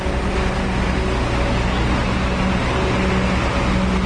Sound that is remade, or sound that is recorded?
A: recorded